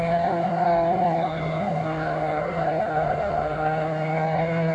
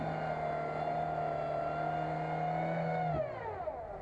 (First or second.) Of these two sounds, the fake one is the first